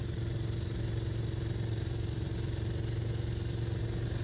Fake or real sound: real